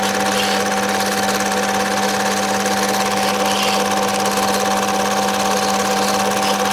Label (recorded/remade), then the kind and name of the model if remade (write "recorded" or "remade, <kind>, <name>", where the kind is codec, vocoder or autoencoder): recorded